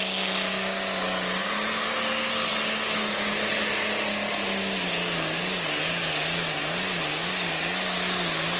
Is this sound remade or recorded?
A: recorded